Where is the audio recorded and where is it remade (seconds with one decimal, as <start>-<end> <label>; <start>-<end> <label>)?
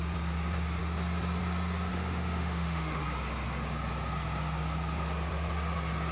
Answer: 0.0-1.9 recorded; 1.9-3.0 remade; 3.0-6.1 recorded